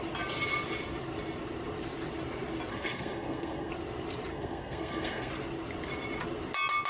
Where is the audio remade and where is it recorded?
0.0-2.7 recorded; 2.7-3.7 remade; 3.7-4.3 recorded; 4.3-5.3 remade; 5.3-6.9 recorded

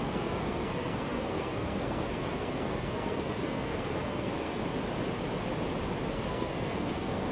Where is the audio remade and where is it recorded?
0.0-4.6 remade; 4.6-6.1 recorded; 6.1-7.3 remade

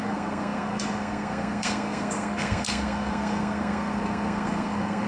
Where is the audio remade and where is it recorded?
0.0-5.1 remade

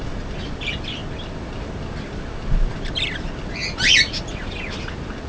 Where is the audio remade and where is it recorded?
0.0-5.3 recorded

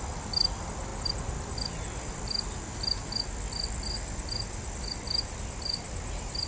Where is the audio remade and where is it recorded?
0.0-6.5 recorded

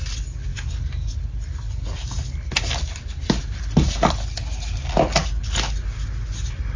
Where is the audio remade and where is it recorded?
0.0-6.8 recorded